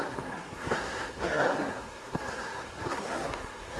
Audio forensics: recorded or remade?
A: remade